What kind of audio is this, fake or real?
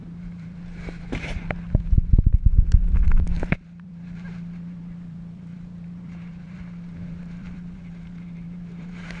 fake